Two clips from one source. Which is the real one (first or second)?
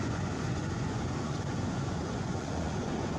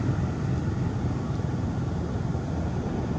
second